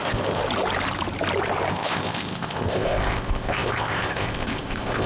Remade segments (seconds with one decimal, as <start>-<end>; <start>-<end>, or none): 0.0-0.4; 1.7-5.1